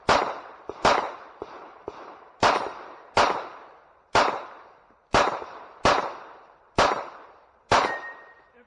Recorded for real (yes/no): no